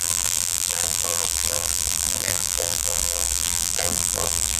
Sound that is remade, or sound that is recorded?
remade